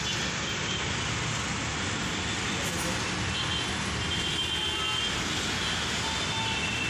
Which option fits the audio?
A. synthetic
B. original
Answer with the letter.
B